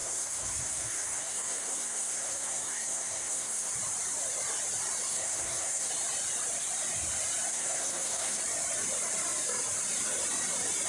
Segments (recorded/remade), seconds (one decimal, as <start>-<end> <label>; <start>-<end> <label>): 0.0-3.7 remade; 3.7-5.1 recorded; 5.1-5.9 remade; 5.9-7.5 recorded; 7.5-8.4 remade; 8.4-10.9 recorded